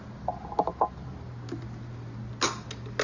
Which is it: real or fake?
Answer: real